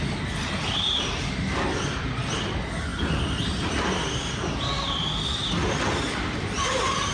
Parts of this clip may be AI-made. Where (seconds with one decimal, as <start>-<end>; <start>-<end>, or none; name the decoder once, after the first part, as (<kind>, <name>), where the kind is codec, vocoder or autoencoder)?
none